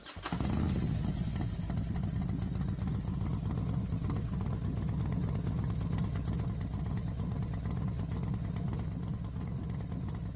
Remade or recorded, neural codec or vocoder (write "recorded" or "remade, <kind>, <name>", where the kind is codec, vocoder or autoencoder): recorded